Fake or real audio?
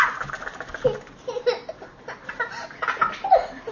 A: real